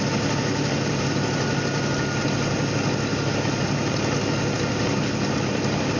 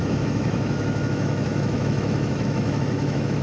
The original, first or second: first